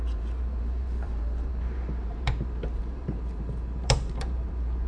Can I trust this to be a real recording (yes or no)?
no